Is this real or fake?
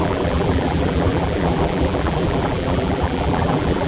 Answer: fake